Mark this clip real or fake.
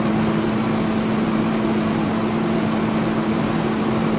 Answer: real